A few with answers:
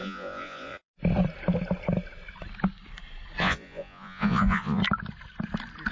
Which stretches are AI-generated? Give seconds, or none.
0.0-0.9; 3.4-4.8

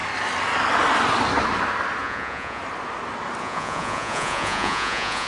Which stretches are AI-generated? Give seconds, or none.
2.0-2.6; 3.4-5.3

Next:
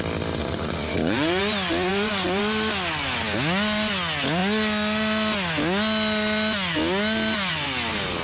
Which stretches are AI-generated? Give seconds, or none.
0.4-1.4; 1.9-2.4

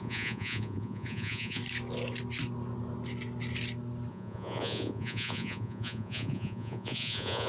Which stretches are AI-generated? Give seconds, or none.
0.0-1.6; 4.1-7.5